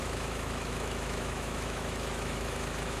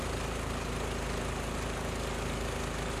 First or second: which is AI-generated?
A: first